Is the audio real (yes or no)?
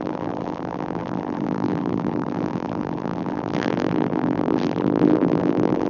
no